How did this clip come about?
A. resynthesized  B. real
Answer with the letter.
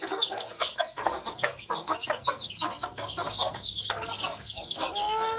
A